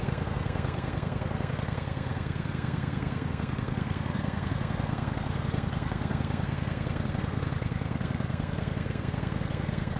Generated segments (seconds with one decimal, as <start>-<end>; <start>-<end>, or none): 0.0-10.0